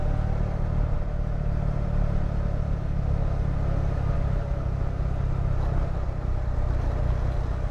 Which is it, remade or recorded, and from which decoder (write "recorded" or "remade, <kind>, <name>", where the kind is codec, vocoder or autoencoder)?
recorded